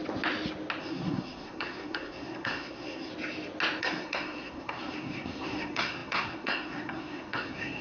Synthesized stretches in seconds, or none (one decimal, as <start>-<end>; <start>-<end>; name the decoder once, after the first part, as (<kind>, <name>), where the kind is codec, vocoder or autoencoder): 0.8-3.1 (codec, SNAC); 3.8-7.8